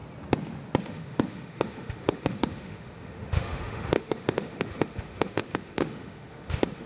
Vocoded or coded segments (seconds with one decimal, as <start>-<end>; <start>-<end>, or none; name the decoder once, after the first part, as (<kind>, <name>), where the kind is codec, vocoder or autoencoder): 0.8-6.9 (autoencoder, DAC-VAE)